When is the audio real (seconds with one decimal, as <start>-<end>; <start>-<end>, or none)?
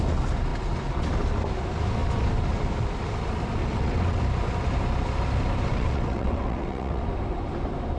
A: 0.0-3.6; 4.2-5.7; 7.0-8.0